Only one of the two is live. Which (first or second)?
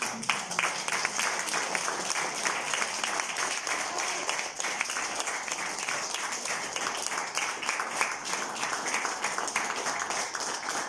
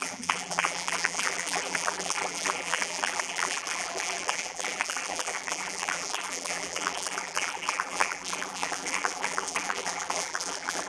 first